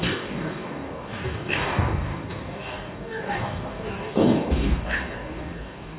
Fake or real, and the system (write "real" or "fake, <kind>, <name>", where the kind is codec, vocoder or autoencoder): fake, codec, DAC